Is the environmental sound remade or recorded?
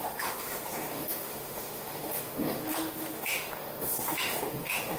remade